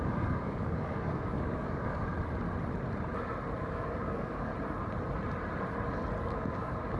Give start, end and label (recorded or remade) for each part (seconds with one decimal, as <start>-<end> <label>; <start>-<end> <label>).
0.0-2.0 remade; 2.0-3.6 recorded; 3.6-4.5 remade; 4.5-6.2 recorded; 6.2-7.0 remade